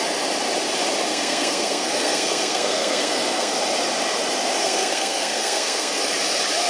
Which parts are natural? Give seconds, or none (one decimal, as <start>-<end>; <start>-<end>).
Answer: 0.0-1.1; 3.5-4.6; 6.0-6.7